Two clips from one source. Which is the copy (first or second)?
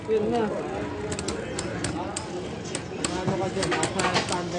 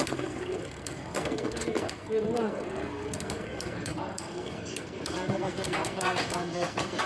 second